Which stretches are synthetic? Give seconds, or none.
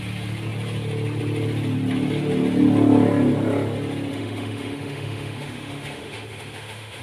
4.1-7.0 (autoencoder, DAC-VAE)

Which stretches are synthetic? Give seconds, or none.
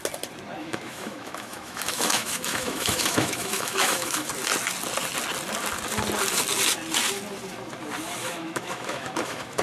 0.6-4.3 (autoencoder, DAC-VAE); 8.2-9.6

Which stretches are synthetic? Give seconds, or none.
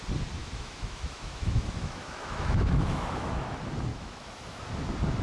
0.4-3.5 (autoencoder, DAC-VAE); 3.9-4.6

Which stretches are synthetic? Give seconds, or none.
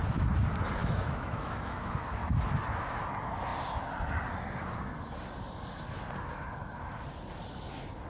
0.8-2.0 (autoencoder, DAC-VAE)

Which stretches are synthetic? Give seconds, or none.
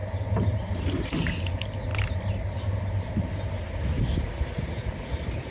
none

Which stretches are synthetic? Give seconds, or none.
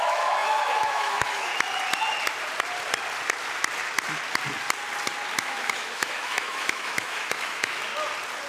0.0-1.5 (autoencoder, DAC-VAE); 5.4-7.9